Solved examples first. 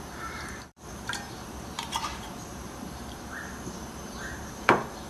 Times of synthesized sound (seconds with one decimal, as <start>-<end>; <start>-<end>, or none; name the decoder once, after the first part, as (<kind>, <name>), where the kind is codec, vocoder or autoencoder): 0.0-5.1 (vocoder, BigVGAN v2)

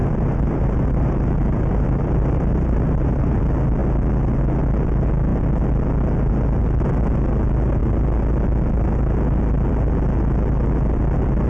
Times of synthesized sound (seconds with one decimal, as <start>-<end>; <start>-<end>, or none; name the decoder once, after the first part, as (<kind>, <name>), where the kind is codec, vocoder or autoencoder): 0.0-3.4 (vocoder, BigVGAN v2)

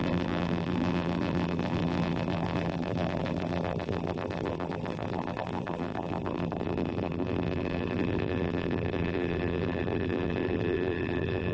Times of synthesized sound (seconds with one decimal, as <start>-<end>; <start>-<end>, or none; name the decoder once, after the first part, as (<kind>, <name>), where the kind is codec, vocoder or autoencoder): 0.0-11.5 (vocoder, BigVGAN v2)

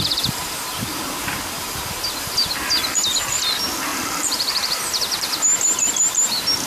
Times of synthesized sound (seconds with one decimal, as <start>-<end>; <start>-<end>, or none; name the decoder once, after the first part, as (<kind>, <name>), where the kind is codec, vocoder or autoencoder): 3.9-5.0 (vocoder, BigVGAN v2)

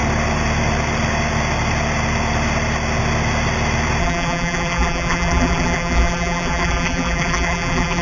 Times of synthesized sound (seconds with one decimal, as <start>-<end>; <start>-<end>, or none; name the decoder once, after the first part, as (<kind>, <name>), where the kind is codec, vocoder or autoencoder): 4.0-8.0 (vocoder, BigVGAN v2)

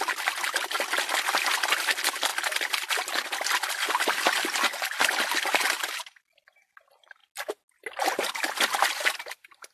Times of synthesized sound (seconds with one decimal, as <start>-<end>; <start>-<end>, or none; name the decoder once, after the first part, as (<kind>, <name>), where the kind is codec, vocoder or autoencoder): none

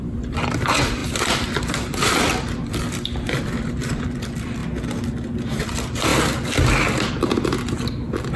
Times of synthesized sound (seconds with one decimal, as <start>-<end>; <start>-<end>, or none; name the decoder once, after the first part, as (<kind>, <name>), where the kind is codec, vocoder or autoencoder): 0.0-4.6 (vocoder, BigVGAN v2); 5.6-6.1; 7.1-8.4

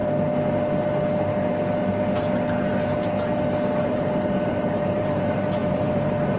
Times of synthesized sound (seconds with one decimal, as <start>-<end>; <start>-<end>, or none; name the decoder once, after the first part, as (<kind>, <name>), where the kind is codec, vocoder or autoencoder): 3.8-6.4 (vocoder, BigVGAN v2)